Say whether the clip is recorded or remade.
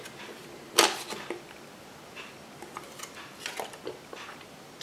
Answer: recorded